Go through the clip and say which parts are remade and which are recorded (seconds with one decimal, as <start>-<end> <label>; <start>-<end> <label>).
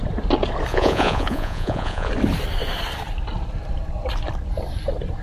0.0-0.7 recorded; 0.7-2.1 remade; 2.1-5.2 recorded